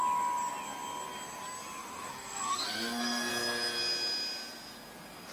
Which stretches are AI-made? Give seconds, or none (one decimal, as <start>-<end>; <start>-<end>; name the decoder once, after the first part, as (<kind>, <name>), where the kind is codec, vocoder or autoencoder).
1.8-3.3 (codec, SNAC)